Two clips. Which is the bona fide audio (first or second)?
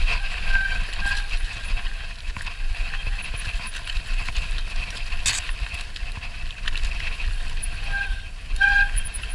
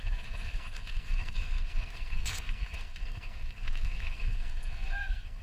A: first